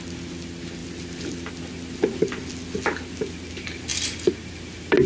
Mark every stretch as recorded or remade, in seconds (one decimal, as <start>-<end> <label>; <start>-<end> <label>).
0.0-5.1 recorded